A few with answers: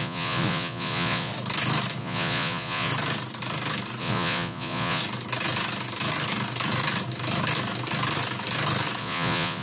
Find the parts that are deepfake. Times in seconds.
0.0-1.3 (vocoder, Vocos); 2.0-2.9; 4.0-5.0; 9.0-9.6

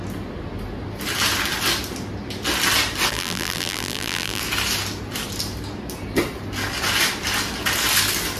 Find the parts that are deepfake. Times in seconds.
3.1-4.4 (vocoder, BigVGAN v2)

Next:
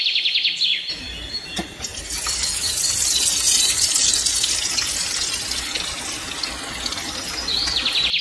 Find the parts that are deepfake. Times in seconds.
none

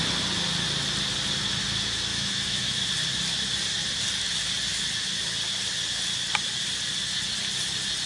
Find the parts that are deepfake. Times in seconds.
2.1-2.9 (autoencoder, DAC-VAE)